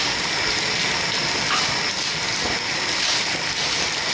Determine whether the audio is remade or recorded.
recorded